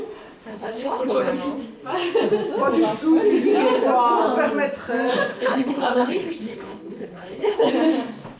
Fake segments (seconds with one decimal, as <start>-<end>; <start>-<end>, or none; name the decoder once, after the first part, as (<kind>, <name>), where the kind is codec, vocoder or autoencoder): 0.5-1.3 (codec, HILCodec); 5.3-7.7